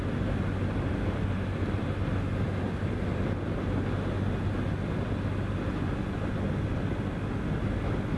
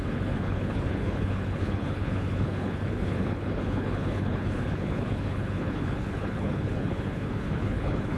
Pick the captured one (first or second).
first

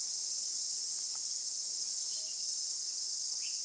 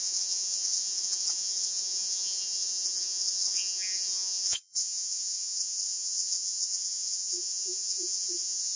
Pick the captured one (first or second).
first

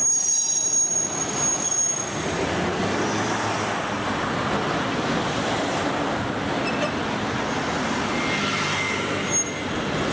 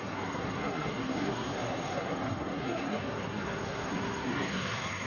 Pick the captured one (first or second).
first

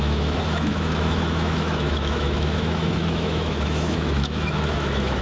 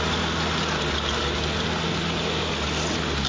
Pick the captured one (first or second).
second